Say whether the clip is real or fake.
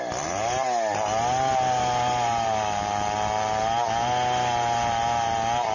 real